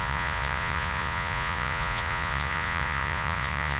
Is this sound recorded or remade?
remade